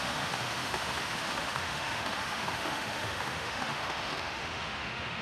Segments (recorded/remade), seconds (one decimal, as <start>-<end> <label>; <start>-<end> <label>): 0.0-5.2 remade